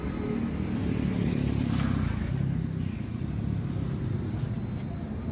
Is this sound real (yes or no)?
yes